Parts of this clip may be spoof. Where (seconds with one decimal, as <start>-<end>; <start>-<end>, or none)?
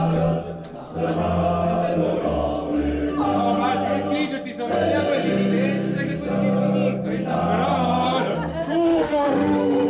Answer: 8.8-9.9